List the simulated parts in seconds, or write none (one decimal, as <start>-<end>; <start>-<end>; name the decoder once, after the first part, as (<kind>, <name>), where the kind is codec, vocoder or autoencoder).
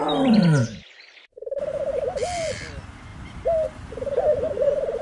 none